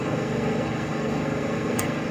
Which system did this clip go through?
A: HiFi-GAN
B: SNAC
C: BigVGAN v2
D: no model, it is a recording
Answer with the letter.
B